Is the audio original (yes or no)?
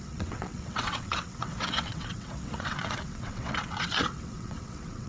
no